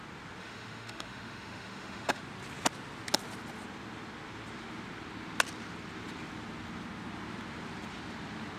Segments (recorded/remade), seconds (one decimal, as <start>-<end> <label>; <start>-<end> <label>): 0.0-0.4 recorded; 0.4-2.2 remade; 2.2-8.6 recorded